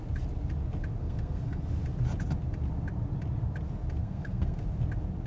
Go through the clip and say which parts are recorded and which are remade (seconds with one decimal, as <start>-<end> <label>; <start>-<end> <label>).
0.0-1.0 recorded; 1.0-1.6 remade; 1.6-4.0 recorded; 4.0-4.6 remade; 4.6-5.3 recorded